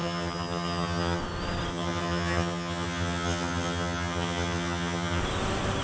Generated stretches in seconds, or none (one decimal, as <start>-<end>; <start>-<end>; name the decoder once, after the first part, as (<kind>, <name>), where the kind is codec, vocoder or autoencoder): 0.0-1.2 (vocoder, HiFi-GAN); 1.7-5.2